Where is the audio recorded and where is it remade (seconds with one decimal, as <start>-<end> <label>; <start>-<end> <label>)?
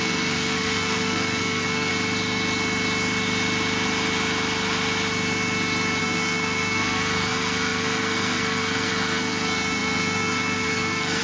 0.0-1.9 remade; 1.9-6.0 recorded; 6.0-11.2 remade